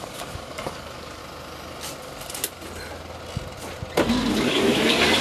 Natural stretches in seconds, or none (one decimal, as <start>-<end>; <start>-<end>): 1.2-4.3